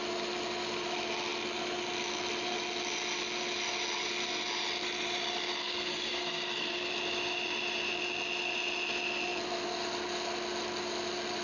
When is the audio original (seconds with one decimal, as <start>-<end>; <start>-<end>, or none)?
0.0-5.6; 6.9-11.4

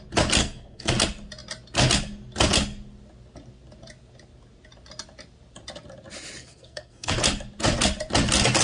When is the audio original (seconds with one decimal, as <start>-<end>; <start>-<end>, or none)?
0.0-0.4; 0.9-6.4; 7.1-8.6